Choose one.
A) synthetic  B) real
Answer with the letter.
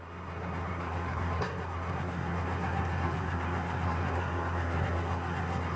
A